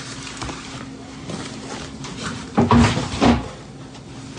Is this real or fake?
real